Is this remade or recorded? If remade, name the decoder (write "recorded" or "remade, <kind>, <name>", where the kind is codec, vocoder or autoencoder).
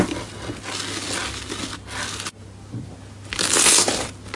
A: recorded